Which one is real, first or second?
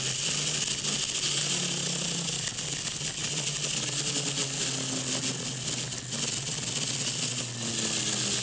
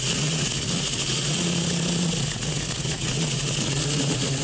first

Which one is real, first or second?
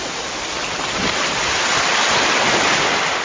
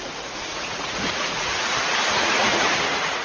first